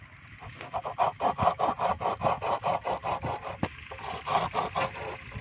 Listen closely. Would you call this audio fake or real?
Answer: real